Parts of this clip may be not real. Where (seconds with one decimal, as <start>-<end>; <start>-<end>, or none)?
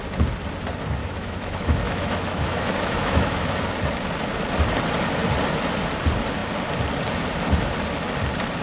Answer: 1.0-3.6